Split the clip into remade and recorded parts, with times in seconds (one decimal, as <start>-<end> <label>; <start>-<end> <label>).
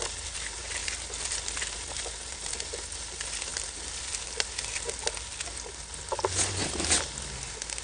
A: 0.0-7.8 recorded